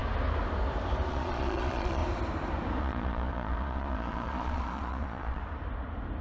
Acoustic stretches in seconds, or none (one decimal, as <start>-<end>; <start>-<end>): 0.0-1.1; 2.0-2.8; 5.4-6.2